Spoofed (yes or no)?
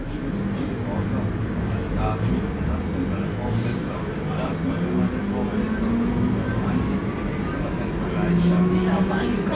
no